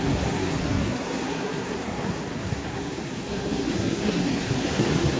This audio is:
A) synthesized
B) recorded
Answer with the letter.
A